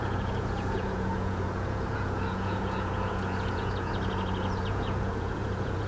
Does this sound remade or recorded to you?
remade